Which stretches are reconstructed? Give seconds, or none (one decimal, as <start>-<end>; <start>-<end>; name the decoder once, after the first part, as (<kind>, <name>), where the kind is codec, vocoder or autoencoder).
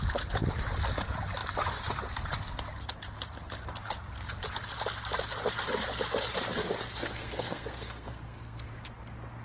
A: 7.0-8.7 (codec, SNAC)